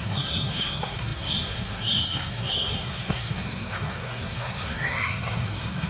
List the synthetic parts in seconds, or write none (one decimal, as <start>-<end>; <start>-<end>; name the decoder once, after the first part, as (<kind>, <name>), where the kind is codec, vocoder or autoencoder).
0.0-5.9 (codec, SNAC)

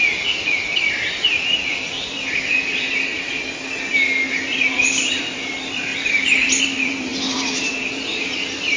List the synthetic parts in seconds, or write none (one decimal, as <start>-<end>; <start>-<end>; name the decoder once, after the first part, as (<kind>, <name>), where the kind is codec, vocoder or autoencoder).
0.0-3.1 (vocoder, BigVGAN v2); 4.3-8.8

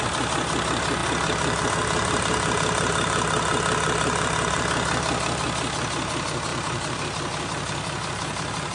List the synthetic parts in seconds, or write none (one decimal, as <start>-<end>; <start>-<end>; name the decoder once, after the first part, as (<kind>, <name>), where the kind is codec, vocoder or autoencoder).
6.5-7.0 (vocoder, BigVGAN v2)

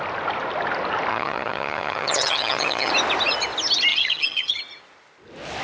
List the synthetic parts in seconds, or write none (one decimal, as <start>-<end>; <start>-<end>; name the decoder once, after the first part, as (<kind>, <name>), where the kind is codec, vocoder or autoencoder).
1.1-2.9 (vocoder, HiFi-GAN); 3.9-4.6

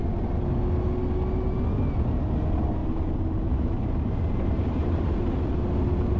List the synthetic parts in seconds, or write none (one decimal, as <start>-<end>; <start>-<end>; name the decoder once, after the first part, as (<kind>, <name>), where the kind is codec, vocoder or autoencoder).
2.8-5.5 (vocoder, BigVGAN v2)

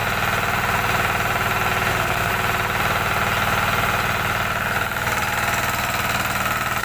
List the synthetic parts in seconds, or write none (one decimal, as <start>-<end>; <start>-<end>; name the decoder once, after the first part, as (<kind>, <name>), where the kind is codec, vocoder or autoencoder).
1.9-2.3 (codec, SNAC)